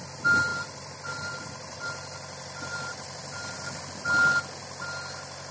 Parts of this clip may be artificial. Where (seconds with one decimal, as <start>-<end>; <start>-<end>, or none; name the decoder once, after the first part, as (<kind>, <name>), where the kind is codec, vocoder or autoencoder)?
0.5-3.8 (vocoder, BigVGAN v2)